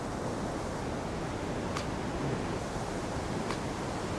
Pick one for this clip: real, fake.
real